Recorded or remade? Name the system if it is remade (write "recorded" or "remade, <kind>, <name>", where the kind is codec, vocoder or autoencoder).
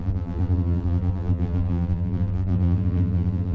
remade, vocoder, BigVGAN v2